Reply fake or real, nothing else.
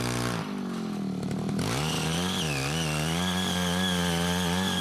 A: real